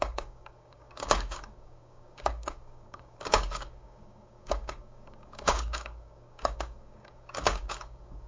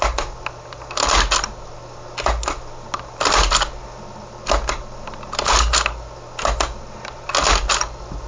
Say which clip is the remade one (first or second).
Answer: first